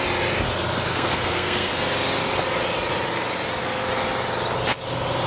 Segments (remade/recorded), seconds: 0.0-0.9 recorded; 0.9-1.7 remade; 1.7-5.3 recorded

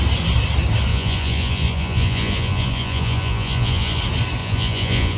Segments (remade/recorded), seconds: 0.0-0.9 recorded; 0.9-4.0 remade; 4.0-4.4 recorded; 4.4-5.2 remade